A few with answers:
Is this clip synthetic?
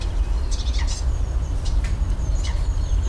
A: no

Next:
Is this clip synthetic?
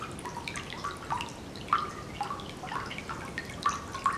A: no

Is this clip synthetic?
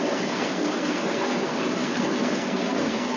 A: yes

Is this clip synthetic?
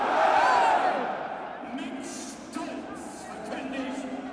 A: no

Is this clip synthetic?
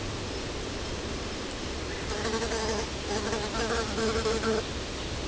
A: no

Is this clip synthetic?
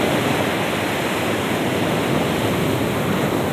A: no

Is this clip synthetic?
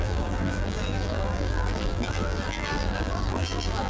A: yes